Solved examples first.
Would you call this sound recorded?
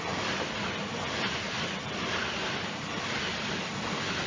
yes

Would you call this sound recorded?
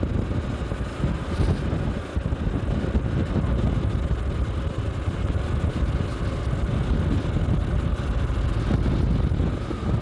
yes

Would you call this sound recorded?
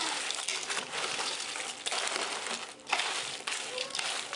yes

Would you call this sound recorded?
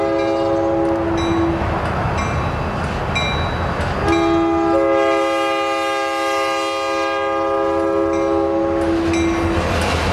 yes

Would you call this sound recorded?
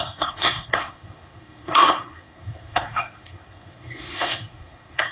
no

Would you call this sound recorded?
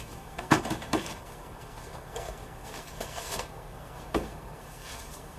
no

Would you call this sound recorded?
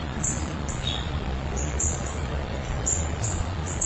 no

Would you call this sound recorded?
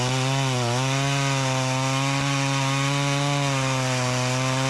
yes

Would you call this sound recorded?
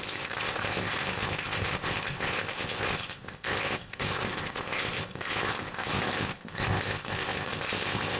no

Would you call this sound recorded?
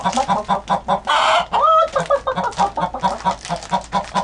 yes